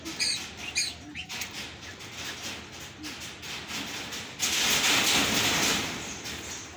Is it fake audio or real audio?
real